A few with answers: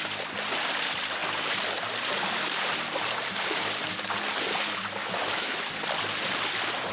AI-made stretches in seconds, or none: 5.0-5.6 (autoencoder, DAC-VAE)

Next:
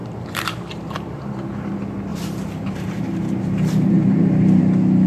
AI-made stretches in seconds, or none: 0.0-1.7 (vocoder, BigVGAN v2); 2.1-4.6